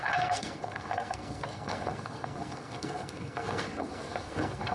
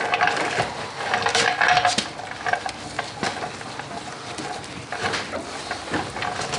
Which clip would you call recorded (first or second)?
second